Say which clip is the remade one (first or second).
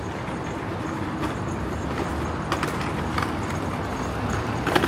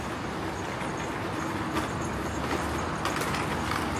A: first